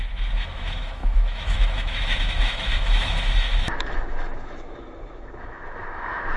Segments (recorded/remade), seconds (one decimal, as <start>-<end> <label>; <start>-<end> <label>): 0.0-6.4 remade